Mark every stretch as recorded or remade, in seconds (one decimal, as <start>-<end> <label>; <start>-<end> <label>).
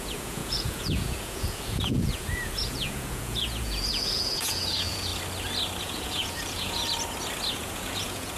0.0-5.1 remade; 5.1-5.8 recorded; 5.8-6.8 remade; 6.8-7.5 recorded; 7.5-8.4 remade